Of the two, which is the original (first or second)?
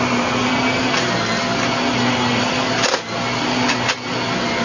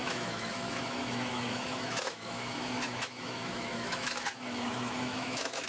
first